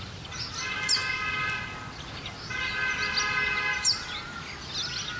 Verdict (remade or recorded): recorded